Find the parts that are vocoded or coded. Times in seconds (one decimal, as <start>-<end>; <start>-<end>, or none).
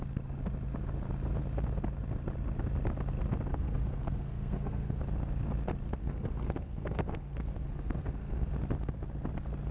3.5-5.0; 6.0-8.5